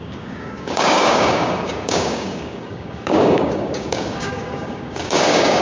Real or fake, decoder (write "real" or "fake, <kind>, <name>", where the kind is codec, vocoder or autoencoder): fake, codec, DAC